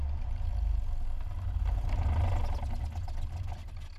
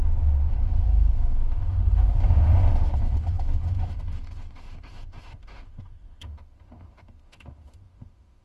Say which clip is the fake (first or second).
second